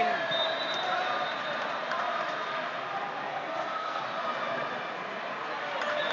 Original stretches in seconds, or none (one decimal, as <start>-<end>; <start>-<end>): 0.0-3.3; 4.0-6.1